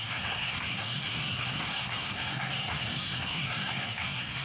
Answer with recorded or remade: remade